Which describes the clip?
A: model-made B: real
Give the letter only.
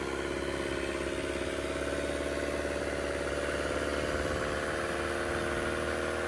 B